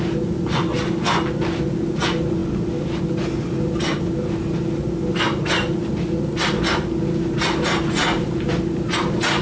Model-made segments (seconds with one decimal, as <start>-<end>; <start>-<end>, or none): none